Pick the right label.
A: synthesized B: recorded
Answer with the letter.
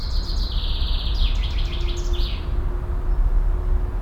B